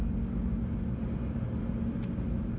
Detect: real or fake real